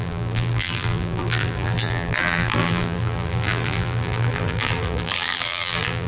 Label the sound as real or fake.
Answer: fake